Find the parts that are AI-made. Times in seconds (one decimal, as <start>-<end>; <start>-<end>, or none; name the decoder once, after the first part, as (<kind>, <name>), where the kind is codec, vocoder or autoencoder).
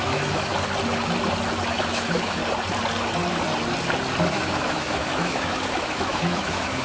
0.0-0.5 (autoencoder, DAC-VAE); 1.7-2.4; 4.3-6.8